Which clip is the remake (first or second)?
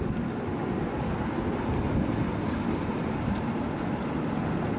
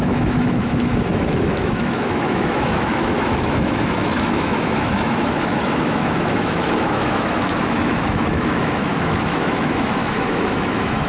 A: second